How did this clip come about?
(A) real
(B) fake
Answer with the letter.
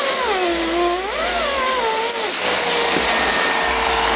A